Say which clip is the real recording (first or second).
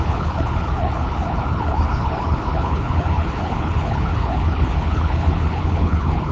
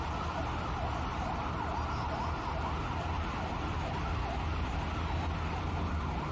second